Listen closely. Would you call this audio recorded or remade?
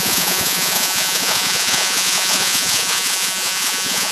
remade